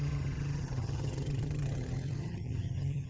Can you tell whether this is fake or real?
fake